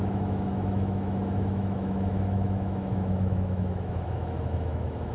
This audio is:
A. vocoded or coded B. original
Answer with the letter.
A